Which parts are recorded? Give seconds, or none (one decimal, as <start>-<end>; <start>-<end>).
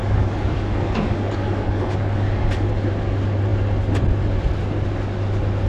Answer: 2.7-5.7